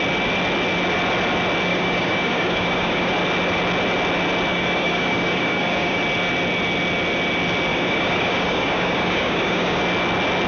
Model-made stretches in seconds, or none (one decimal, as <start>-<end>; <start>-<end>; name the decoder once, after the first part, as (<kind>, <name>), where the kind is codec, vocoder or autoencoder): 1.7-3.1 (codec, DAC); 4.5-6.0; 7.7-9.8